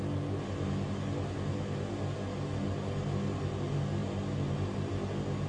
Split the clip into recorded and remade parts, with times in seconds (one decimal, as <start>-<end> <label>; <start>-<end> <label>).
0.0-5.5 recorded